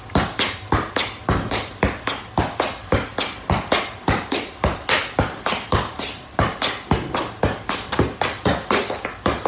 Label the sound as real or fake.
real